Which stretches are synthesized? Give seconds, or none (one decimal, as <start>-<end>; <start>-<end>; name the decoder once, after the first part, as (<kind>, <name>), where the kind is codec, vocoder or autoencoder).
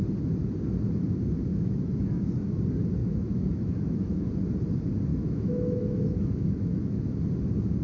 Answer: 1.5-2.5 (autoencoder, DAC-VAE); 3.0-4.3; 5.1-7.0